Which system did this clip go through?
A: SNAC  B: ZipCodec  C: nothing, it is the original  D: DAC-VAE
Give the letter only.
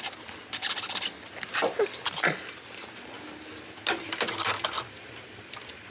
C